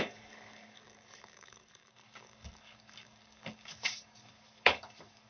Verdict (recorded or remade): remade